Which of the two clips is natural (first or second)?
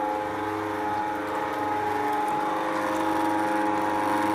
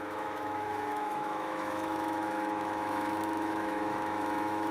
first